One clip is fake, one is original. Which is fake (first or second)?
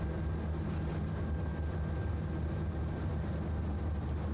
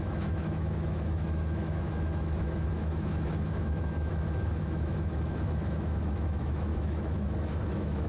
second